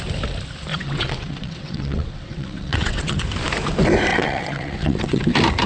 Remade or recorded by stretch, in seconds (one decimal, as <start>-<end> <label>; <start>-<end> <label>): 0.0-0.7 recorded; 0.7-3.2 remade; 3.2-4.1 recorded; 4.1-5.2 remade; 5.2-5.7 recorded